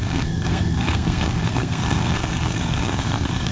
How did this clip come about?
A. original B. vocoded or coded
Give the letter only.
B